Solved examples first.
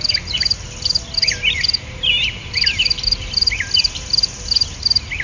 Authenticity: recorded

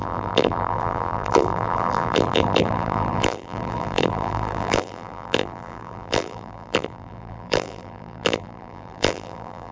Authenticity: remade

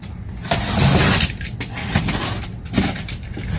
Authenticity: recorded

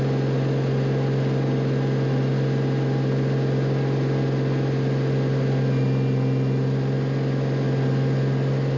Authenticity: recorded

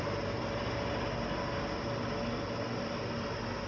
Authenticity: recorded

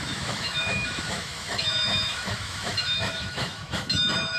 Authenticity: remade